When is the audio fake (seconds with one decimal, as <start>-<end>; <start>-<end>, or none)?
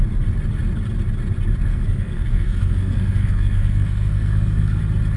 1.7-4.8